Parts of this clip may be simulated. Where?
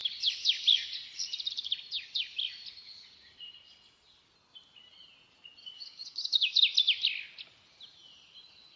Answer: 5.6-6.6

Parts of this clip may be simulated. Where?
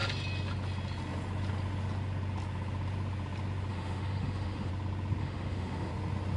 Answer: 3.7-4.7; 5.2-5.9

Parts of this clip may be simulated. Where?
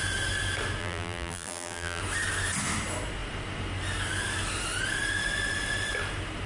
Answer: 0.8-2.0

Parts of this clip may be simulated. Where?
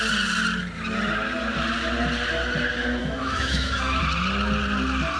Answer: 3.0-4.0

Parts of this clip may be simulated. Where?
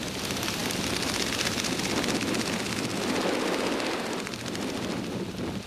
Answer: none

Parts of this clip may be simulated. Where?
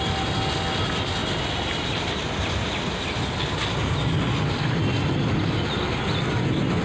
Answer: none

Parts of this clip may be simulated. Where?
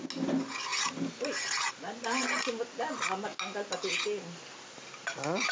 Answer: 0.7-2.2